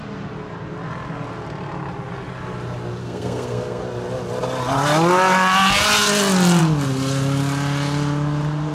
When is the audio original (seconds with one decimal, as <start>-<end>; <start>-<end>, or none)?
0.0-3.0; 3.8-8.7